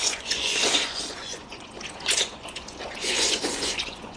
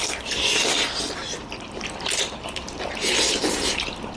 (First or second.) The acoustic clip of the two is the second